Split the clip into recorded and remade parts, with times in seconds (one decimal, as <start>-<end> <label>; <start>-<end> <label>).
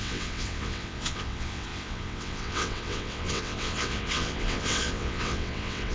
0.0-5.9 remade